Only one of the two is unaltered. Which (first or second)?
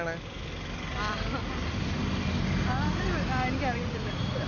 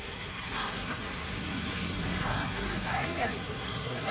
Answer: first